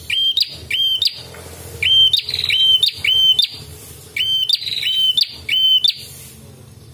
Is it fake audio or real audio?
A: real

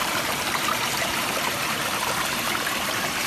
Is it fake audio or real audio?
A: fake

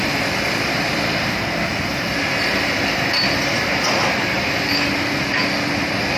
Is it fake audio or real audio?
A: real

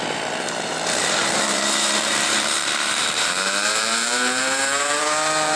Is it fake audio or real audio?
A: fake